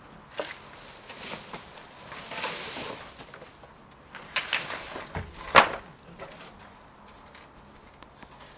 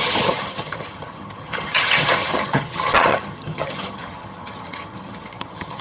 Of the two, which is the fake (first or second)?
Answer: second